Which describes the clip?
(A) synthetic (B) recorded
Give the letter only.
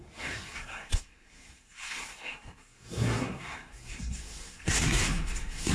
A